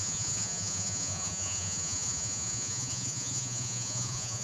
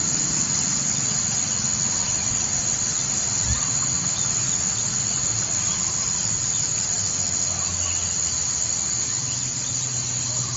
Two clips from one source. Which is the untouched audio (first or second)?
second